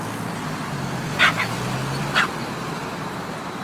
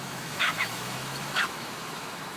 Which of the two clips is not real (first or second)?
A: second